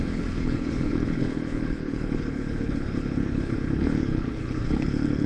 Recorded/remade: remade